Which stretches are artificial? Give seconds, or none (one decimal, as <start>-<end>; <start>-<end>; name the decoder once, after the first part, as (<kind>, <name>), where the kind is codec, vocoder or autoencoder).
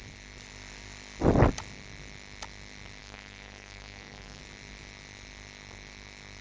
3.0-4.4 (codec, SNAC)